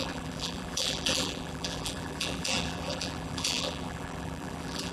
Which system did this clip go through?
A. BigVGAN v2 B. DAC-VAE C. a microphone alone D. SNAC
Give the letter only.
A